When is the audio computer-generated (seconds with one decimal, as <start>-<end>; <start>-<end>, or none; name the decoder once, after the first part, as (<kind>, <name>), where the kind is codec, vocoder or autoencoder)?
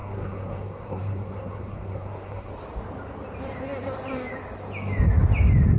0.0-2.5 (codec, SNAC)